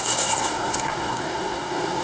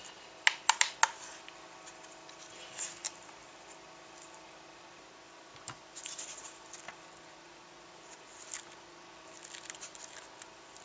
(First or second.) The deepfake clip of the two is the first